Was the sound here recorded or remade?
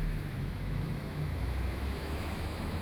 remade